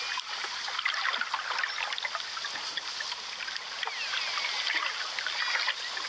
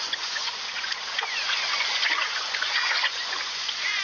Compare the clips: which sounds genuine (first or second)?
first